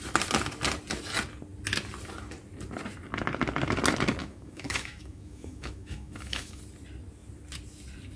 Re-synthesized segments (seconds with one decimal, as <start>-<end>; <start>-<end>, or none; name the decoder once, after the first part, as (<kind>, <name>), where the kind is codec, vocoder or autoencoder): 4.2-6.6 (autoencoder, DAC-VAE)